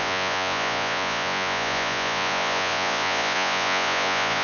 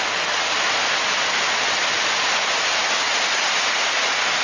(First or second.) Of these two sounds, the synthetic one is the first